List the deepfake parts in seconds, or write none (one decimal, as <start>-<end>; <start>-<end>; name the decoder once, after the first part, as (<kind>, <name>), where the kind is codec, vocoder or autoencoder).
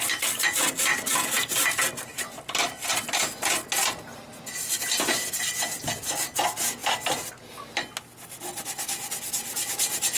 0.9-3.1 (vocoder, BigVGAN v2)